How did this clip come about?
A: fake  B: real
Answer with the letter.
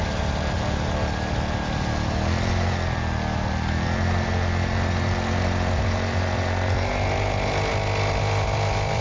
B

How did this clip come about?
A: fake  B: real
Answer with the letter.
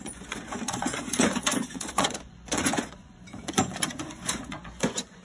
A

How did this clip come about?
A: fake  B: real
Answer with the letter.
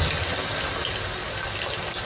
B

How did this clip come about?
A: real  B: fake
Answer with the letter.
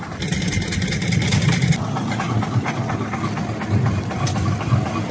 A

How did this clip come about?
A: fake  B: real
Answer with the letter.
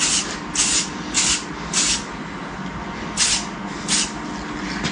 B